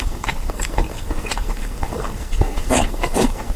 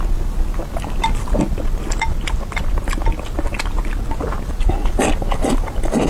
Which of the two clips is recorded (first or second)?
second